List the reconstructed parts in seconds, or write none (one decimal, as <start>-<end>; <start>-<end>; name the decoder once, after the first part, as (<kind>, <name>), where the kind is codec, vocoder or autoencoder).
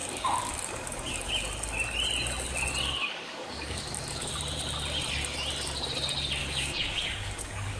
0.0-1.3 (codec, DAC); 3.0-4.3; 6.4-7.8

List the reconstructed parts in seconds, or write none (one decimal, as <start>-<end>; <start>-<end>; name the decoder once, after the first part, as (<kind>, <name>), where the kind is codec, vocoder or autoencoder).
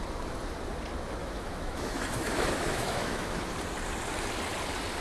1.2-3.5 (autoencoder, DAC-VAE)